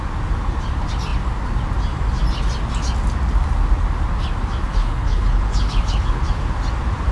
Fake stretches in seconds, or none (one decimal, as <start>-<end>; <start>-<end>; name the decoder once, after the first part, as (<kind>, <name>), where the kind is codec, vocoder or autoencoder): 4.7-6.2 (codec, HILCodec)